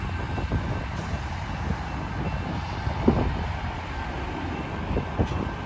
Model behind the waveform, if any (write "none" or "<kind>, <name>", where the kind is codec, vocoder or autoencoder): none